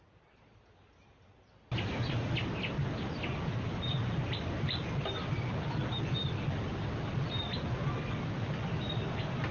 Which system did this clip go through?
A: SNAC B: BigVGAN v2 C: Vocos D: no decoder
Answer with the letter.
D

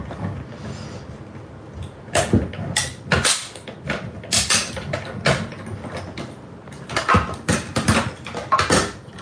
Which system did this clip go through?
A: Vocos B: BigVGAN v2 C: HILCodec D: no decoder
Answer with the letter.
D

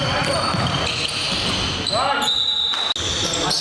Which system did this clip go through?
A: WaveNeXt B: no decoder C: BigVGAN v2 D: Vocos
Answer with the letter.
B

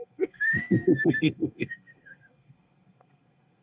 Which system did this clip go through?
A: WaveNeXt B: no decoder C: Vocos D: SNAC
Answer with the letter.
D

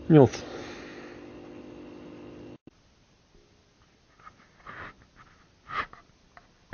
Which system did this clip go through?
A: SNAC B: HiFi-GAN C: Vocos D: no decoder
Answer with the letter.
D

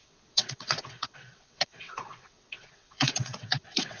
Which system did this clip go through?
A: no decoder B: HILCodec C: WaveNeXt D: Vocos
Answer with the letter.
C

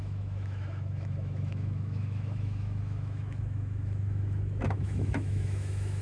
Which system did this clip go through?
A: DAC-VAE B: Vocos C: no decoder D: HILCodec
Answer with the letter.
A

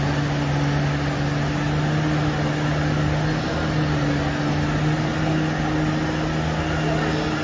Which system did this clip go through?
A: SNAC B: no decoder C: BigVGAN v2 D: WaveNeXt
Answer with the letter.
B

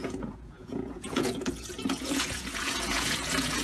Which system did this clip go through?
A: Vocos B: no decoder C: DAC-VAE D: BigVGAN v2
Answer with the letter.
A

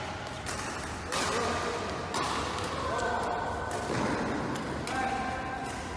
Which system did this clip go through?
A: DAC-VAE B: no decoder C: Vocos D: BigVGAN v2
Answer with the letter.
B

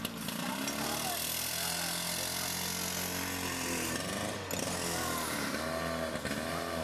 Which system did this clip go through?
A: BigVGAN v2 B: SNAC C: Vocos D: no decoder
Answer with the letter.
D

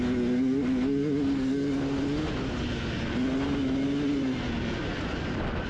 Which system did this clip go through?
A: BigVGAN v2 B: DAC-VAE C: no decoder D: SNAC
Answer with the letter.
C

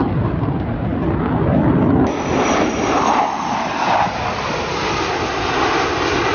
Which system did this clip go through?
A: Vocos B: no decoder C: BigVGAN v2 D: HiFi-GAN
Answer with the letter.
B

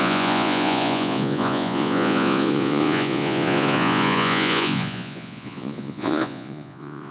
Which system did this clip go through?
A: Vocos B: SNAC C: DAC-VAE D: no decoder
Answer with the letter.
A